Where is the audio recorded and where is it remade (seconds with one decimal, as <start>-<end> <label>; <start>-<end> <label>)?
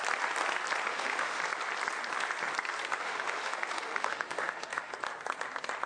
0.0-0.9 recorded; 0.9-1.4 remade; 1.4-3.0 recorded; 3.0-4.9 remade; 4.9-5.9 recorded